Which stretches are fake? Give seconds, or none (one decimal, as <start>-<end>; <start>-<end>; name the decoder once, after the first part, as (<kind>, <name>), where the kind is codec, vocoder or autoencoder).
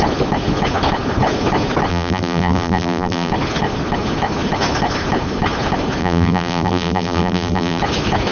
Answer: 1.9-3.3 (vocoder, BigVGAN v2); 6.0-7.8